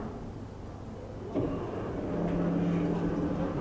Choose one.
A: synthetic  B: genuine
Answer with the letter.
B